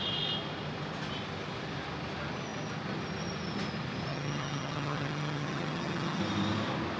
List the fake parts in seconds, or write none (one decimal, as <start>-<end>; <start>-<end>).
4.1-6.2

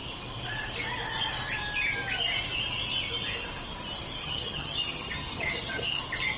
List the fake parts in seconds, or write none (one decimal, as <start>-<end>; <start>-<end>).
4.2-6.0

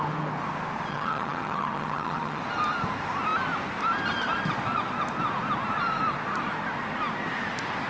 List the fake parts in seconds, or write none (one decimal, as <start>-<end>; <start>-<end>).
0.9-2.4

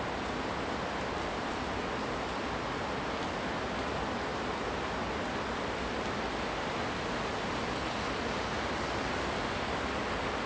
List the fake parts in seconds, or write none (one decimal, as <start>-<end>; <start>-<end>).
none

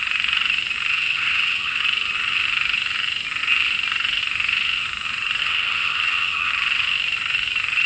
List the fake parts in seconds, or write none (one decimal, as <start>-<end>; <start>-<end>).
0.9-1.8; 5.4-6.5

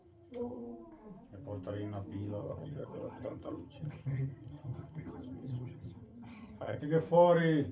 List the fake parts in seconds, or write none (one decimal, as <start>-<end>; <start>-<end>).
0.0-0.6; 2.4-6.8

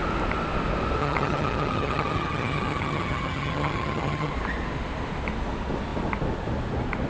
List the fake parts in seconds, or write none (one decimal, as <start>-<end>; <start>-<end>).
1.0-4.3